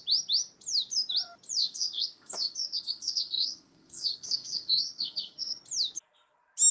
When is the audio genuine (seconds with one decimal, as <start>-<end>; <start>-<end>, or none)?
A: 0.0-1.6; 5.6-6.7